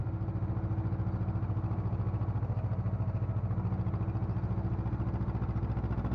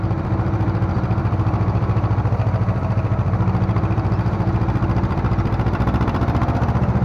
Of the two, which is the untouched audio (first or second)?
first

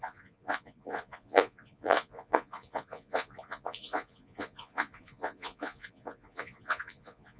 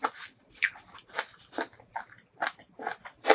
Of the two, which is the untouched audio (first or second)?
second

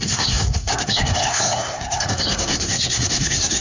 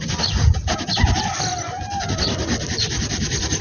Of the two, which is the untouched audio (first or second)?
second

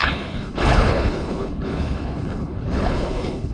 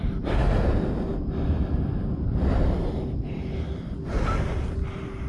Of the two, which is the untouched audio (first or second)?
second